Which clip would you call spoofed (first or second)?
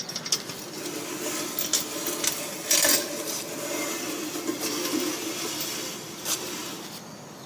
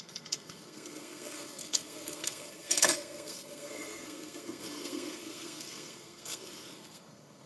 second